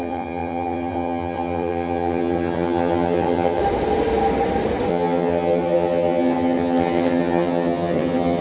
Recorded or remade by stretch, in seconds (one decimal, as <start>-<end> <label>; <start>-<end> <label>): 0.0-3.6 remade; 3.6-4.9 recorded; 4.9-8.4 remade